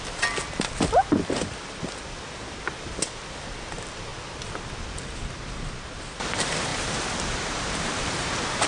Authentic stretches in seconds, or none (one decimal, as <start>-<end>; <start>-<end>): 0.0-6.7